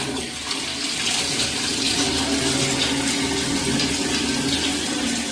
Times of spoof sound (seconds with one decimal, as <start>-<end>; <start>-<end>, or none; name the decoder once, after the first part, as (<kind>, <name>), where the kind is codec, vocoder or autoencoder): none